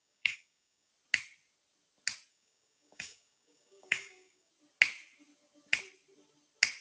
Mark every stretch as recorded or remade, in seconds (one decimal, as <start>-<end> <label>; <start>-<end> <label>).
0.0-0.9 remade; 0.9-2.3 recorded; 2.3-4.5 remade; 4.5-6.8 recorded